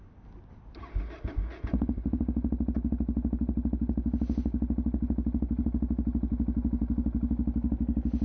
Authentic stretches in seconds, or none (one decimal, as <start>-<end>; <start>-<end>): 0.0-8.2